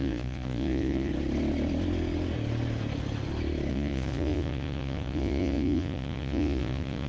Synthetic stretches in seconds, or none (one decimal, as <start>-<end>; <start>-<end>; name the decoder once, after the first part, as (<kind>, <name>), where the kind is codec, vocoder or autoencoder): 0.0-1.1 (vocoder, Vocos); 3.7-7.1